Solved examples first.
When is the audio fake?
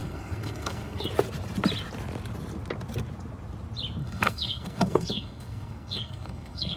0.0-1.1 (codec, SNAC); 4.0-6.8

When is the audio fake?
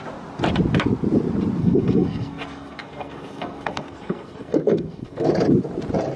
1.6-5.3 (codec, SNAC)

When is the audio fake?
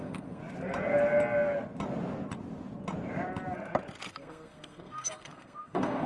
0.0-0.4 (codec, SNAC); 4.1-6.1